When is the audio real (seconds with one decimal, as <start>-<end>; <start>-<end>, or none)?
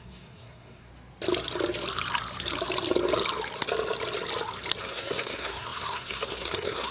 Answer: 0.9-4.8